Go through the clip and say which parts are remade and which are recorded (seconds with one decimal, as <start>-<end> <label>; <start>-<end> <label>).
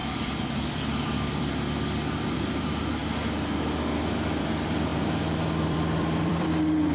0.0-3.0 remade; 3.0-4.4 recorded; 4.4-6.9 remade